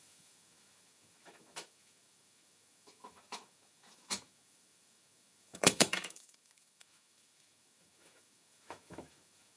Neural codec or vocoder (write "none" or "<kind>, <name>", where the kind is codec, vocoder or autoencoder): autoencoder, DAC-VAE